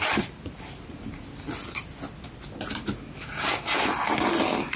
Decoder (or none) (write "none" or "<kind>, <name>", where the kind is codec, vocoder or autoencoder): none